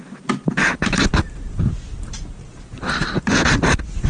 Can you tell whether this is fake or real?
real